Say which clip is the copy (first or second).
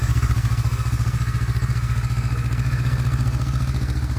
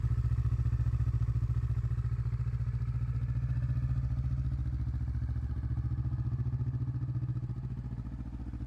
first